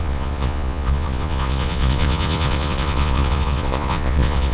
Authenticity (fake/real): fake